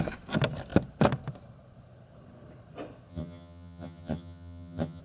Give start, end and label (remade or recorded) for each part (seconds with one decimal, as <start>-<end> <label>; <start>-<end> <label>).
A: 0.0-3.1 recorded; 3.1-5.0 remade